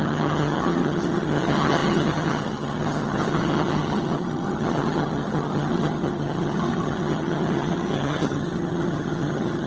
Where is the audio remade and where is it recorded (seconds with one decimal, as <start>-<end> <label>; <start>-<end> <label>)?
0.0-9.7 remade

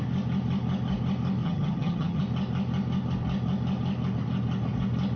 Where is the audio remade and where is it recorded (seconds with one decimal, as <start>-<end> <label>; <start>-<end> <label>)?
0.0-1.4 recorded; 1.4-2.2 remade; 2.2-5.2 recorded

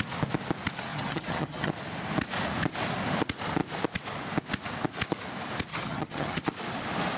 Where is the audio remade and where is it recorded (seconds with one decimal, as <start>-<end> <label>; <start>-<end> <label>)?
0.0-0.9 recorded; 0.9-1.7 remade; 1.7-5.7 recorded; 5.7-6.4 remade; 6.4-7.2 recorded

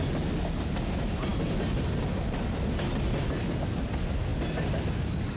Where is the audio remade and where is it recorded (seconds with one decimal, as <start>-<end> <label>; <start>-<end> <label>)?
0.0-5.4 recorded

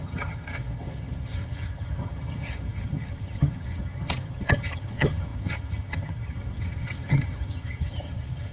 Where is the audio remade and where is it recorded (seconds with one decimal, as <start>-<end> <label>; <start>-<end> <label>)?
0.0-8.5 remade

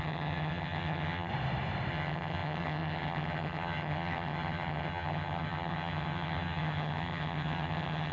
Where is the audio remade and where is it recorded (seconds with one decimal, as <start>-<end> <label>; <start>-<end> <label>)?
0.0-1.3 remade; 1.3-1.9 recorded; 1.9-8.1 remade